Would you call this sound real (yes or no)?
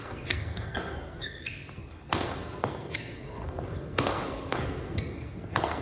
no